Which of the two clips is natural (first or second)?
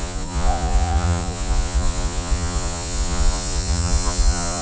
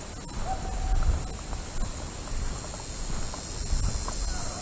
second